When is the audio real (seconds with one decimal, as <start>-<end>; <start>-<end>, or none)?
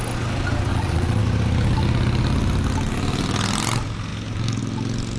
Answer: 0.0-0.7; 1.2-5.2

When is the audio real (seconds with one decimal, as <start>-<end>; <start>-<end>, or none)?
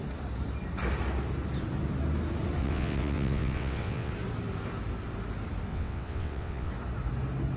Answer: 0.0-2.6; 4.1-5.7; 6.7-7.6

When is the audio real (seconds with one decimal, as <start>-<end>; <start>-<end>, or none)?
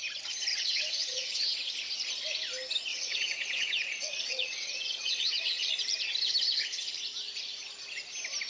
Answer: 0.0-0.5; 1.7-2.9; 5.7-8.5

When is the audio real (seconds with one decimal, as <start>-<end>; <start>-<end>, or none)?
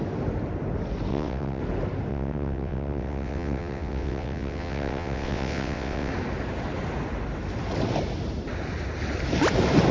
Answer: 0.0-1.1; 1.6-2.1; 6.1-9.9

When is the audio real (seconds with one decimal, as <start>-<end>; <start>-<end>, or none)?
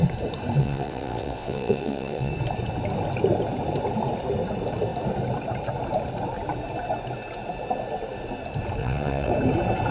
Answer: 0.0-0.6; 2.3-8.8; 9.3-9.9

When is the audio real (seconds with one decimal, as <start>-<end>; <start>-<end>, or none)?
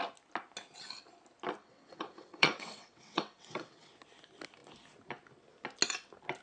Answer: 0.0-1.6; 3.9-6.4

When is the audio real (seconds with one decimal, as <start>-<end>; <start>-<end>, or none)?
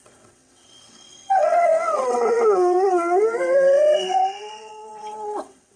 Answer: none